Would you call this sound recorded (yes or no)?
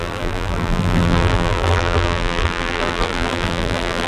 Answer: no